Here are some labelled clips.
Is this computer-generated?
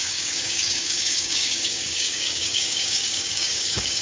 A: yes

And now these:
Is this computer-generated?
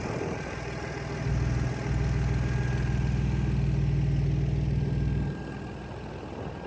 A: no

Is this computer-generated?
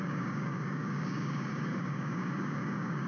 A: yes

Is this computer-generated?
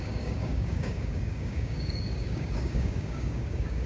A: yes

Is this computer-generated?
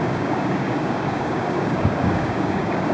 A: yes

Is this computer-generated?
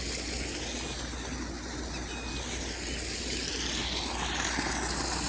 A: no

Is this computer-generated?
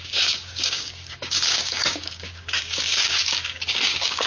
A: yes